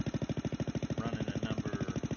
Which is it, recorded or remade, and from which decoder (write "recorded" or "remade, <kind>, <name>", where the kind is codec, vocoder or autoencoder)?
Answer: recorded